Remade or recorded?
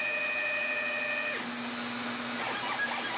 recorded